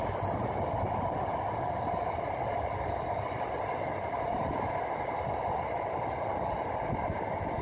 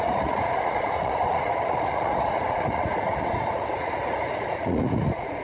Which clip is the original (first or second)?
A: first